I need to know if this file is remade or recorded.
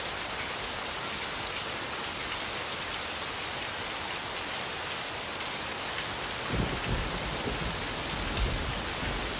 recorded